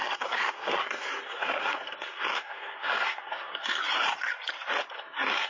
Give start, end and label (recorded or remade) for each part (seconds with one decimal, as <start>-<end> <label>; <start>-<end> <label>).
0.0-3.8 remade; 3.8-4.9 recorded; 4.9-5.5 remade